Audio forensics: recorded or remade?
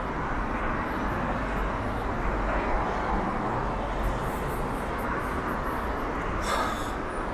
recorded